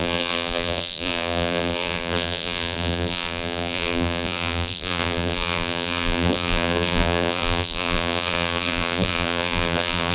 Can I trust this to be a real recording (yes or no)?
no